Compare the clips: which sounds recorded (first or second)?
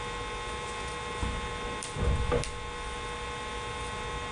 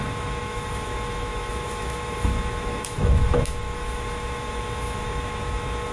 first